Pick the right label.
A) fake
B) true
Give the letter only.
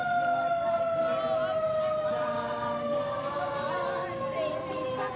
B